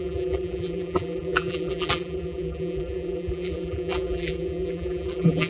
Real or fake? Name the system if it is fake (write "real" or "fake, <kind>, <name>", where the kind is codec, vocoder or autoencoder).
fake, vocoder, BigVGAN v2